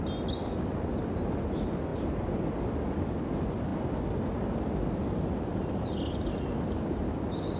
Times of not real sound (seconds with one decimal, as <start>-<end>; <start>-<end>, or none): none